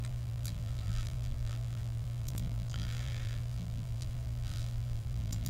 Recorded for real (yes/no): no